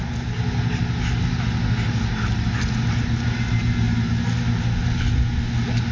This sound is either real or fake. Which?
real